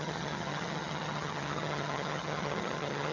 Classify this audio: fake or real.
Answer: fake